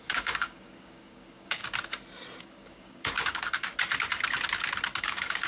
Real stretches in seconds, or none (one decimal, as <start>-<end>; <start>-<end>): 1.6-2.4; 3.7-5.0